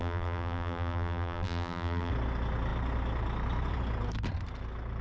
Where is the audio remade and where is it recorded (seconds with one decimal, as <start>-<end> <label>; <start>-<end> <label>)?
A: 0.0-2.1 remade; 2.1-5.0 recorded

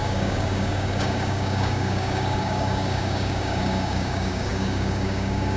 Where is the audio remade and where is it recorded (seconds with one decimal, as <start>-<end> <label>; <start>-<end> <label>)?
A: 0.0-5.6 remade

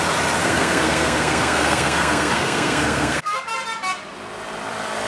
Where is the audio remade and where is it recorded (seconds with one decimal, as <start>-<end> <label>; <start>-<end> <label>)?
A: 0.0-0.4 recorded; 0.4-3.5 remade; 3.5-5.1 recorded

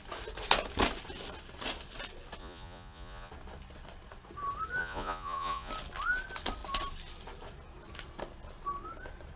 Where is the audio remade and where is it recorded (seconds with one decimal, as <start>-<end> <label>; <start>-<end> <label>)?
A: 0.0-2.4 recorded; 2.4-3.3 remade; 3.3-4.8 recorded; 4.8-5.7 remade; 5.7-9.4 recorded

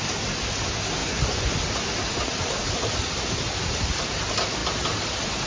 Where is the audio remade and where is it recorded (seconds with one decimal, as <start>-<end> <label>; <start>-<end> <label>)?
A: 0.0-1.0 recorded; 1.0-1.5 remade; 1.5-5.5 recorded

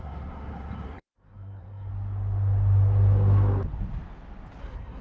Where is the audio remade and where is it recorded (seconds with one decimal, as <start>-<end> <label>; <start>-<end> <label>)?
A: 0.0-1.9 remade; 1.9-4.6 recorded; 4.6-5.0 remade